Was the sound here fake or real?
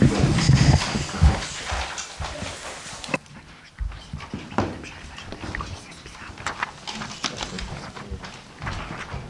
real